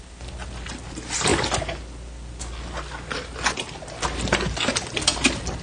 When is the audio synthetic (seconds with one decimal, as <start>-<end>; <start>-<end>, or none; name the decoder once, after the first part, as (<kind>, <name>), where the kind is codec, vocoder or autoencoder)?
none